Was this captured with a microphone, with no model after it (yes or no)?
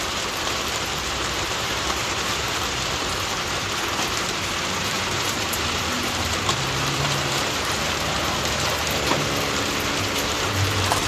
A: no